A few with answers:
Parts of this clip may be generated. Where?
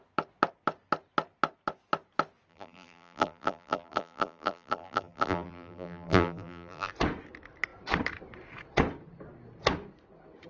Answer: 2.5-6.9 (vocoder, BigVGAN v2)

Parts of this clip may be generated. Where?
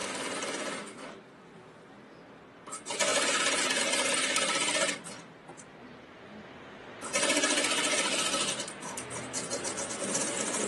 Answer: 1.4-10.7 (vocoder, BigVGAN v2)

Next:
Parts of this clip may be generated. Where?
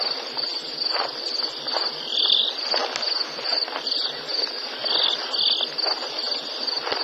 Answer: 0.0-2.8 (vocoder, BigVGAN v2); 3.5-4.8; 5.9-7.0